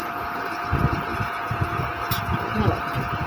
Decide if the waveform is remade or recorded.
remade